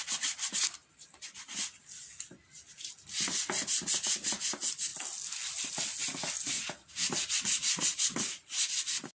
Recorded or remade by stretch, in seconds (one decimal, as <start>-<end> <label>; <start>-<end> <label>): 0.0-9.2 recorded